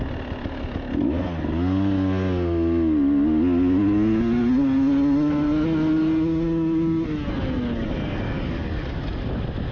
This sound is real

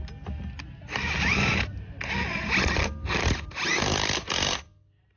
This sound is real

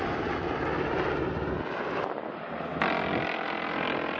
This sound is real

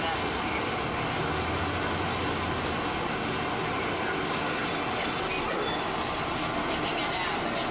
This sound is real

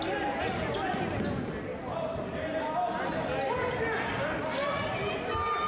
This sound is real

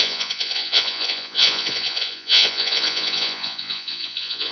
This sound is fake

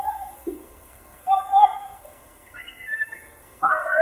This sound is fake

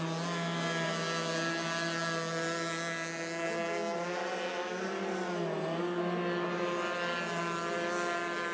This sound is real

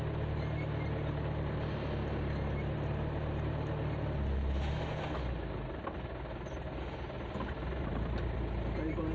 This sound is real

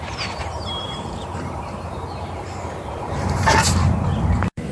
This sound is fake